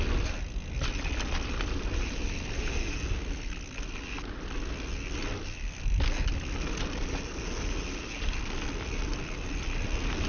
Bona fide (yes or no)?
yes